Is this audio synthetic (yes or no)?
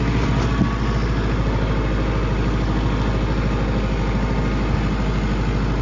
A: no